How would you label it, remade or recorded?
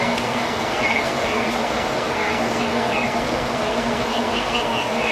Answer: remade